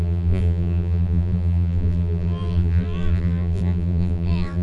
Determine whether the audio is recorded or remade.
remade